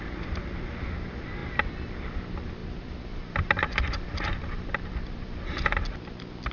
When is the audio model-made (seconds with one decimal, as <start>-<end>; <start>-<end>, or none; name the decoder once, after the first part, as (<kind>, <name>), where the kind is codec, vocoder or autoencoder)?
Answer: 1.4-2.0 (vocoder, BigVGAN v2); 2.6-6.5